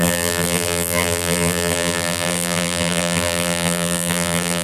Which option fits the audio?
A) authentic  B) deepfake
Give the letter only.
B